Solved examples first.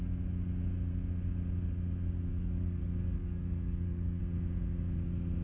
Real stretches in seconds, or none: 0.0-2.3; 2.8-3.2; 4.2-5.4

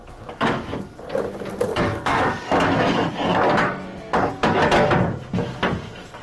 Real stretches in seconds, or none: 0.9-1.7; 4.3-6.2

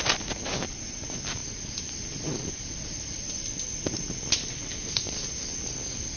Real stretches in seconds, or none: 0.0-6.2

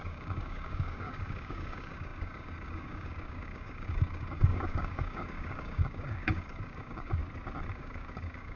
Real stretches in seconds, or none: 7.2-7.7

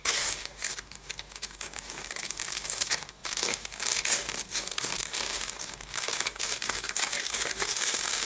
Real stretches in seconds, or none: none

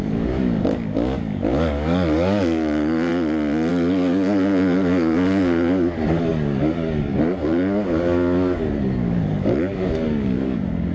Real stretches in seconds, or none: 3.1-3.7